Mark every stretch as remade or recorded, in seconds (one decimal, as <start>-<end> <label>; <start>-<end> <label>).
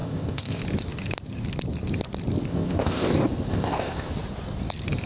0.0-0.6 remade; 0.6-2.5 recorded; 2.5-3.1 remade; 3.1-3.5 recorded; 3.5-4.1 remade; 4.1-5.1 recorded